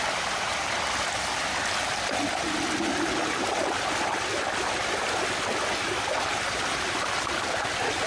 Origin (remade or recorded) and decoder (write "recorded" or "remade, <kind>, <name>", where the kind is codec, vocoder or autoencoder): recorded